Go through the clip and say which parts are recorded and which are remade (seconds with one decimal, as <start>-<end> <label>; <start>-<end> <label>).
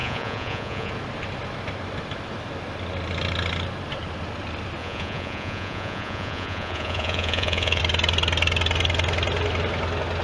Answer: 0.0-0.9 remade; 0.9-4.8 recorded; 4.8-7.8 remade; 7.8-10.2 recorded